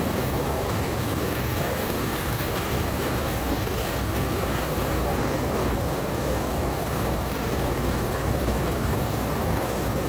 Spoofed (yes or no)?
yes